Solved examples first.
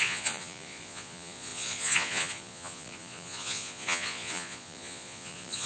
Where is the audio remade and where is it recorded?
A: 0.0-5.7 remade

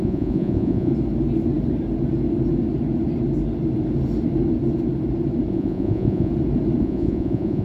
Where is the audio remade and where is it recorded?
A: 0.0-0.9 remade; 0.9-5.5 recorded; 5.5-6.3 remade; 6.3-6.8 recorded; 6.8-7.6 remade